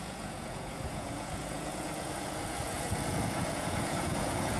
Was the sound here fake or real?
fake